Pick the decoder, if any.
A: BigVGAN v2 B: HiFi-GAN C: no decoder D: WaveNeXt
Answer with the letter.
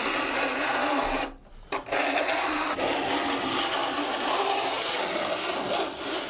C